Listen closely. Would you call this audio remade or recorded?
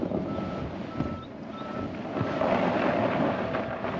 recorded